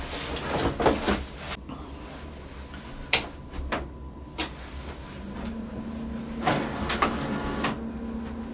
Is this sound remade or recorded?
recorded